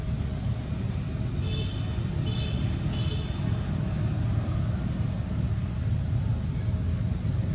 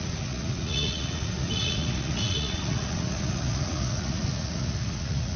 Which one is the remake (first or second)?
second